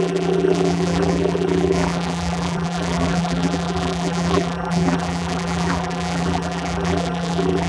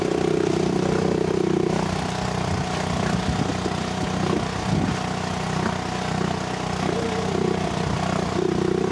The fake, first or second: first